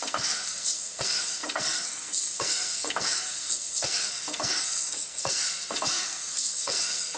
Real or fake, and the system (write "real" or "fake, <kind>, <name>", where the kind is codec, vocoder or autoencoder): fake, codec, SNAC